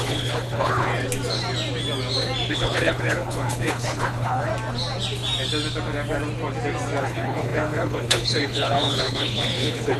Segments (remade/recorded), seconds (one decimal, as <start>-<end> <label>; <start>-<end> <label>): 0.0-0.9 remade; 0.9-2.5 recorded; 2.5-4.5 remade; 4.5-7.0 recorded; 7.0-10.0 remade

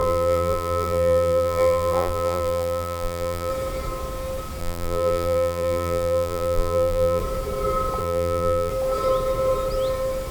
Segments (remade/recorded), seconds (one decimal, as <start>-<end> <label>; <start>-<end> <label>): 0.0-3.5 remade; 3.5-4.6 recorded; 4.6-7.2 remade; 7.2-8.0 recorded; 8.0-8.7 remade; 8.7-10.3 recorded

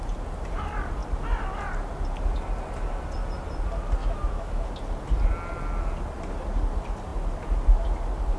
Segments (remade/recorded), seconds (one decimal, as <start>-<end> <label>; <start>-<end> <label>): 0.0-4.0 recorded; 4.0-4.7 remade; 4.7-8.4 recorded

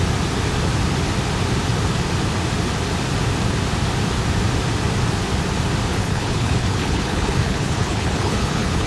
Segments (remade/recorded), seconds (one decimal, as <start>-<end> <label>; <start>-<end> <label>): 0.0-5.9 recorded; 5.9-8.9 remade

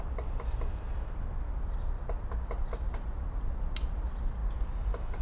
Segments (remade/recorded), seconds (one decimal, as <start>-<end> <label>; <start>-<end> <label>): 0.0-5.2 recorded

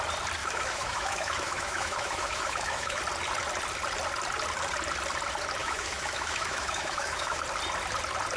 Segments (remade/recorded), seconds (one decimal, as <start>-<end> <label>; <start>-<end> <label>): 0.0-0.4 recorded; 0.4-3.0 remade; 3.0-5.6 recorded; 5.6-7.4 remade; 7.4-8.4 recorded

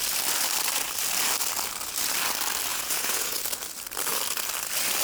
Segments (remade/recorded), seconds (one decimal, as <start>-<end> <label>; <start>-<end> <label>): 0.0-2.7 recorded; 2.7-3.4 remade; 3.4-5.0 recorded

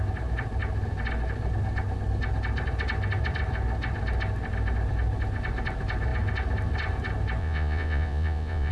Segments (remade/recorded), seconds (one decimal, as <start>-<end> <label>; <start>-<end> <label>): 0.0-7.4 recorded; 7.4-8.7 remade